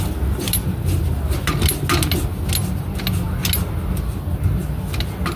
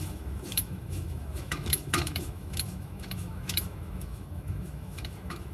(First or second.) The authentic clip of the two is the first